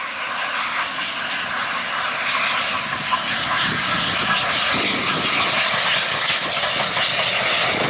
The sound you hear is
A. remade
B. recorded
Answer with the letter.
B